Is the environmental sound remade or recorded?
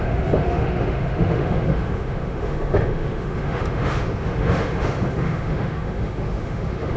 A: remade